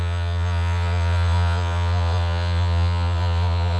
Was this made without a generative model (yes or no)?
no